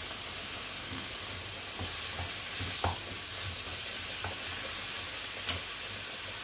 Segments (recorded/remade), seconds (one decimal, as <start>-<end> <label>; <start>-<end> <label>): 0.0-0.4 recorded; 0.4-1.1 remade; 1.1-6.4 recorded